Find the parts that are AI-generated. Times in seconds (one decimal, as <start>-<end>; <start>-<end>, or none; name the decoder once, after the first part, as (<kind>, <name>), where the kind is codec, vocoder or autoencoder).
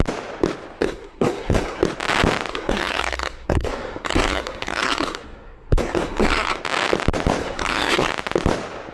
0.8-1.8 (codec, SNAC); 2.5-6.6; 7.4-8.1